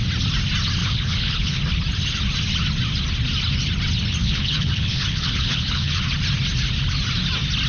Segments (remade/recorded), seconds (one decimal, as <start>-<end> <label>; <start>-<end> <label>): 0.0-0.8 recorded; 0.8-1.6 remade; 1.6-4.2 recorded; 4.2-6.0 remade; 6.0-7.7 recorded